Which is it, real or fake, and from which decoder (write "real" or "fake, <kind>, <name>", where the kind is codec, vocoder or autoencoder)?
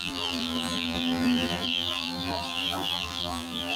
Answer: fake, vocoder, BigVGAN v2